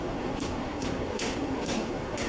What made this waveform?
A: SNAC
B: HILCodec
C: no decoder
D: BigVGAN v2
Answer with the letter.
A